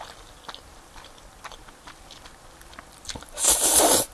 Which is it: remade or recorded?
recorded